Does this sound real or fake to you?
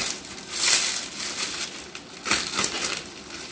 real